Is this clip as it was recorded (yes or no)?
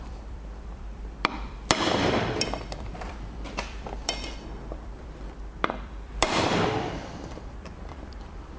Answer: no